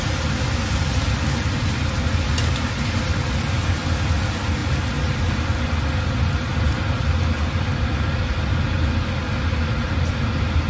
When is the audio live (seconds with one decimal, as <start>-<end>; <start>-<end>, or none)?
0.0-10.7

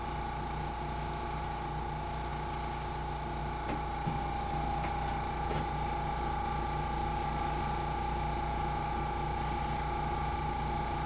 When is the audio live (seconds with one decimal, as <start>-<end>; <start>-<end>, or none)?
0.0-11.1

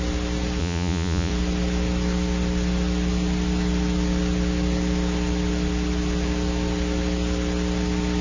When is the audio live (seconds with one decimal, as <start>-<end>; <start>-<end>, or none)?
0.0-0.6; 1.3-8.2